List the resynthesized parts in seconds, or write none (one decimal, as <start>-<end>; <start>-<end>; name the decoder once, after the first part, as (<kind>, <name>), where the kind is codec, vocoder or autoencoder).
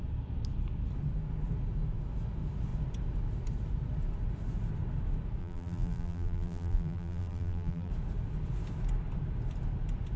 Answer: 5.4-7.9 (vocoder, BigVGAN v2)